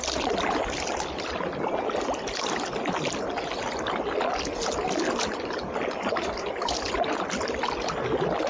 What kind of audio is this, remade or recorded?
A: recorded